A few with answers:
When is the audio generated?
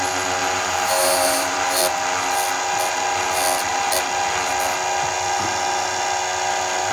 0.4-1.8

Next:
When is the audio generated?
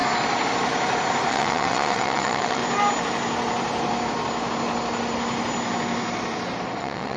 1.3-2.6; 6.8-7.2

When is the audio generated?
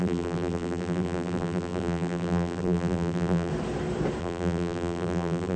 0.0-3.5; 4.2-5.6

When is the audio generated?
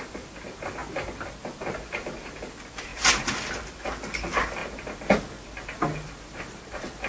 none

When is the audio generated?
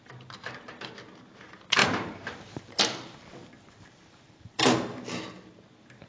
1.8-4.6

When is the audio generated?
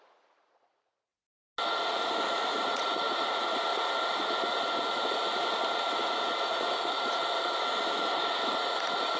0.0-1.1; 1.7-9.2